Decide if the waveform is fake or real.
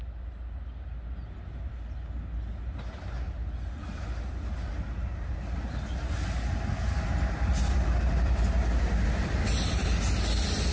real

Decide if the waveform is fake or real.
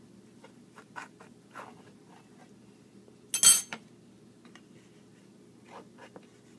real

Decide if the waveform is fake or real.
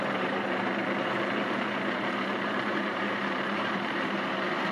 fake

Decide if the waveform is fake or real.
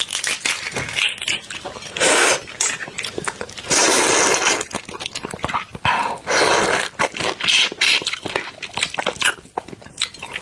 real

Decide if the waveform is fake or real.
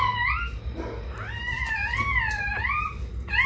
real